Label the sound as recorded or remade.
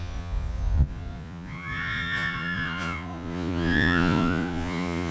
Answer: remade